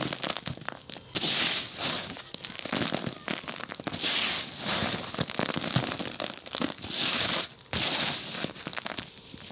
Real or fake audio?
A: real